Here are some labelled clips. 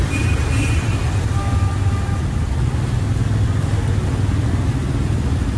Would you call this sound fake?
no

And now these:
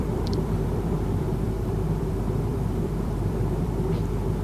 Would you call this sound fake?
yes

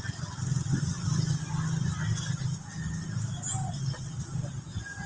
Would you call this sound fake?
no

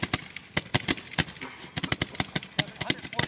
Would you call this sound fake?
no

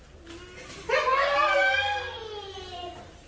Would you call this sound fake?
no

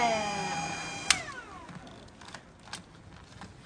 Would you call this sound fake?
no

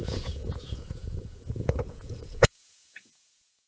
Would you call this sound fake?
yes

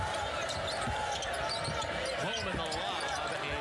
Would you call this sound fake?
no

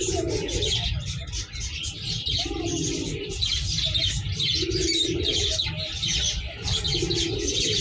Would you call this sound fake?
no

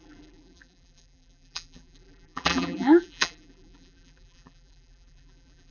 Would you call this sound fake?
yes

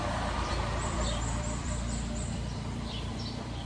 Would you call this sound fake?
yes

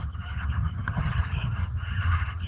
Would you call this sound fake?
yes